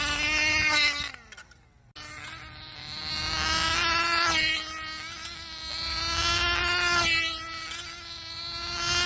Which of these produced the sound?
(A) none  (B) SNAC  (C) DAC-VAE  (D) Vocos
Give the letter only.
A